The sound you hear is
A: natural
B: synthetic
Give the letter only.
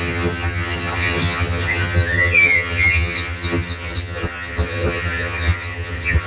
B